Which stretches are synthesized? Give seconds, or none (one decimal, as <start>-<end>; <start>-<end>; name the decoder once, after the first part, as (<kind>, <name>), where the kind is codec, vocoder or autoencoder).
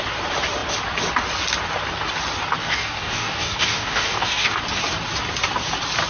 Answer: 2.6-4.6 (codec, DAC)